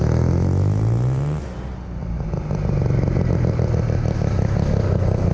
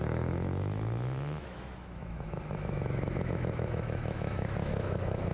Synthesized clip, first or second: second